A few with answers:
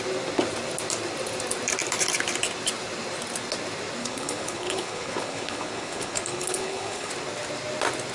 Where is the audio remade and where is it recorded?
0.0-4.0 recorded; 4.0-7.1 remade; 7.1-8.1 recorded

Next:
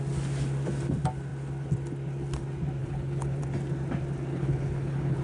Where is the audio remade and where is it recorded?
0.0-2.8 recorded; 2.8-3.4 remade; 3.4-4.3 recorded; 4.3-5.2 remade

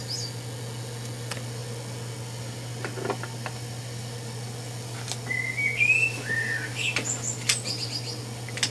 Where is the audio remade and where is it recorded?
0.0-8.7 recorded

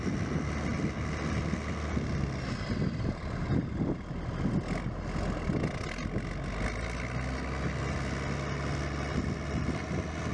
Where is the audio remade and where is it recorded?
0.0-10.3 recorded

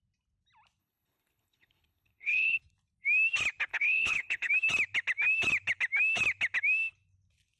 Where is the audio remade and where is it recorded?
0.0-0.8 recorded; 0.8-2.6 remade; 2.6-3.7 recorded; 3.7-4.5 remade; 4.5-7.6 recorded

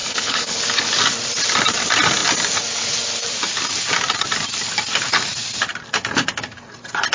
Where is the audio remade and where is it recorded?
0.0-0.6 remade; 0.6-7.1 recorded

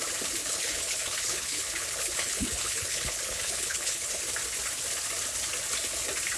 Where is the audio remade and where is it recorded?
0.0-0.4 recorded; 0.4-4.2 remade; 4.2-6.4 recorded